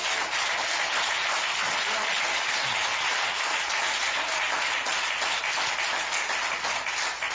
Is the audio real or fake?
real